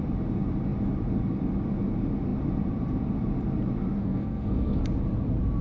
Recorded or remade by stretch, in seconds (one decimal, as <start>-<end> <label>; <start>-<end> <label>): 0.0-4.0 recorded; 4.0-4.8 remade; 4.8-5.6 recorded